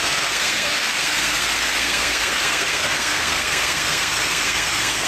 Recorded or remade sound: remade